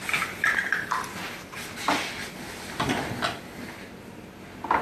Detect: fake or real real